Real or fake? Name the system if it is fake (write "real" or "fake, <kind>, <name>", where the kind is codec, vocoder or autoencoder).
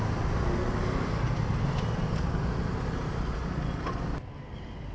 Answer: real